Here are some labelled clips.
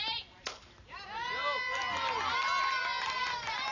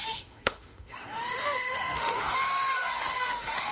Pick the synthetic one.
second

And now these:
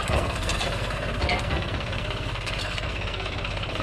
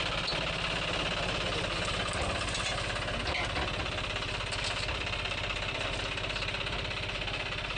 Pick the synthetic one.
first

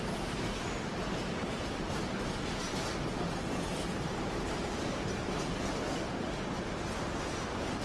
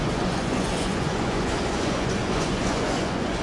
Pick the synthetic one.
second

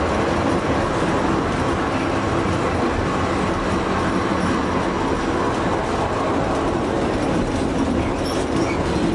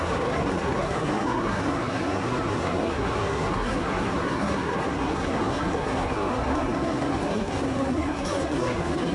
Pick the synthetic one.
second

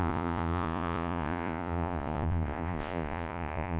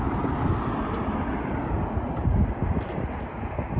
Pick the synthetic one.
first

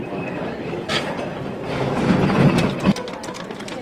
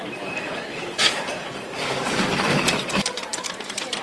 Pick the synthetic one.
second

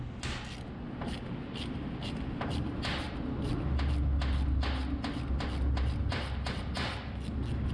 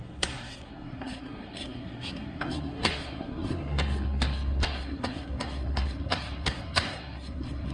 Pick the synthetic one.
second